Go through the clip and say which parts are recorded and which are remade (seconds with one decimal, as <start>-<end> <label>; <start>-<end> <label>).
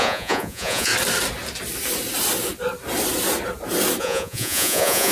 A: 0.0-0.9 remade; 0.9-4.0 recorded; 4.0-5.1 remade